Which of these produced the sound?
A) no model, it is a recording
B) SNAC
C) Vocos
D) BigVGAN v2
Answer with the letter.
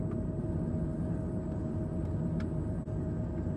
A